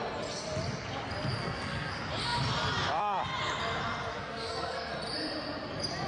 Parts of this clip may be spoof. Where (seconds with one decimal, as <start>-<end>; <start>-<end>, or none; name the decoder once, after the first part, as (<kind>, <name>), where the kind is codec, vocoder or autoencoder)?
1.4-1.9 (codec, SNAC); 4.1-4.9

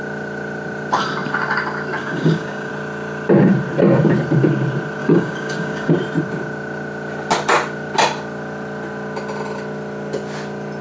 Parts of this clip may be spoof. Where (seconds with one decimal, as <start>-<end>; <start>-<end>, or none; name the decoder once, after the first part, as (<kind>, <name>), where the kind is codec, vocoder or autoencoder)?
2.0-2.7 (codec, DAC); 5.0-5.9